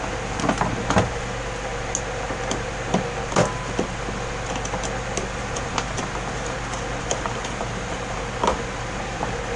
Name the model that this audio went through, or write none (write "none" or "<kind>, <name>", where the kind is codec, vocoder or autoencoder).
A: none